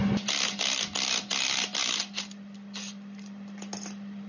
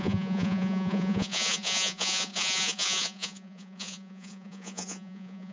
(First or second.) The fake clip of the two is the second